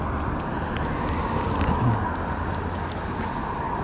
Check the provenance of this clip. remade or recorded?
recorded